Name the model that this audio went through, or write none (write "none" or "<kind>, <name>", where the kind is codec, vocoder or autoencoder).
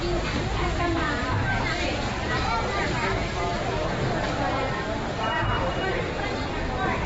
none